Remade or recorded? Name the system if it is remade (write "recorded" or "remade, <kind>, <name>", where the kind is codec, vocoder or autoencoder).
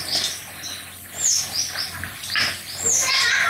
recorded